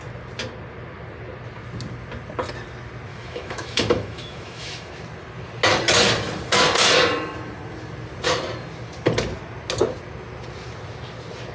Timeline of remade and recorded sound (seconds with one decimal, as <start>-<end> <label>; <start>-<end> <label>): 0.0-3.1 recorded; 3.1-4.9 remade; 4.9-11.5 recorded